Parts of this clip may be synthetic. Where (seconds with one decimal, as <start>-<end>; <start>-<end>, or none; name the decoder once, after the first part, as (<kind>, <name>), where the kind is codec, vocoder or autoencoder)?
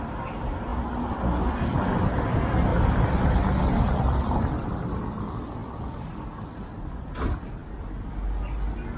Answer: 2.7-3.8 (vocoder, BigVGAN v2); 5.6-6.1; 7.6-8.1